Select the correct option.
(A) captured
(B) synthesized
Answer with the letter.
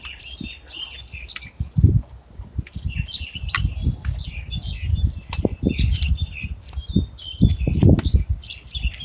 A